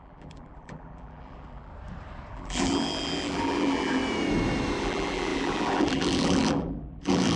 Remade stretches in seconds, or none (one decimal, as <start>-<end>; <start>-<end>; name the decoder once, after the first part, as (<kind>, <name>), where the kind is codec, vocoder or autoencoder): 0.0-1.7 (vocoder, BigVGAN v2); 2.3-4.0; 4.8-7.4

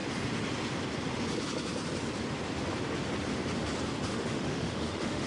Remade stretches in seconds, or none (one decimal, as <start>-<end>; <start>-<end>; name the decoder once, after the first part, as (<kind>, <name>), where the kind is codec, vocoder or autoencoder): 4.1-5.3 (autoencoder, DAC-VAE)

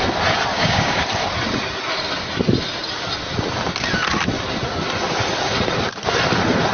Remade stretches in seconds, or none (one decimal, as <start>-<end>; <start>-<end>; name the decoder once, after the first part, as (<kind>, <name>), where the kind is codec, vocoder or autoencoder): 0.5-1.0 (codec, DAC)